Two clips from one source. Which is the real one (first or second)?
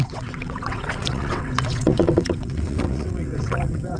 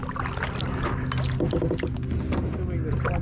second